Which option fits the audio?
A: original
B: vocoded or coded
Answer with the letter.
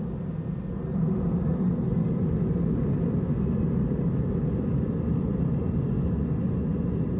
A